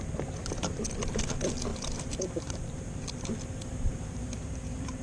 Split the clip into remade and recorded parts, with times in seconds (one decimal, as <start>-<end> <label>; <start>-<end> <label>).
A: 0.0-1.7 recorded; 1.7-5.0 remade